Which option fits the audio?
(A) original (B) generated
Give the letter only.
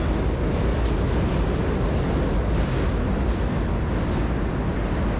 A